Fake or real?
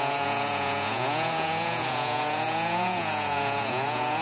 fake